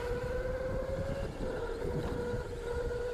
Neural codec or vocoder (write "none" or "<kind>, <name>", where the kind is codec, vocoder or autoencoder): none